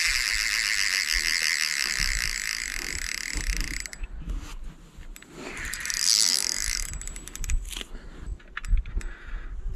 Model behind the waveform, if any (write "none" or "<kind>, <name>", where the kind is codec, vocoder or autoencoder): none